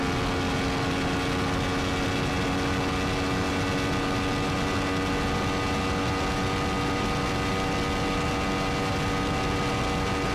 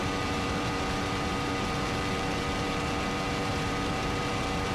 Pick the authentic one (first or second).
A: first